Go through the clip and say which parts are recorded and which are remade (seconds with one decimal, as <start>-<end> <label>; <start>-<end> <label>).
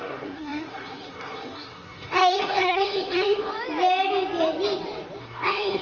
0.0-3.5 remade; 3.5-5.2 recorded; 5.2-5.8 remade